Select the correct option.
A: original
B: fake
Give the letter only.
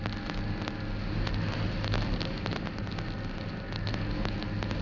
A